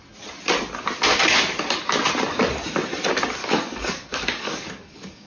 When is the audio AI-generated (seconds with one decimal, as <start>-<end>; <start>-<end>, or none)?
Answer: 3.4-5.3